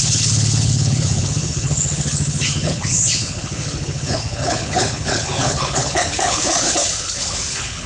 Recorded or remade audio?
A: remade